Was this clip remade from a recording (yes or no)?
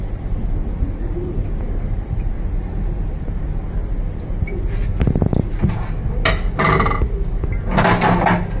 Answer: no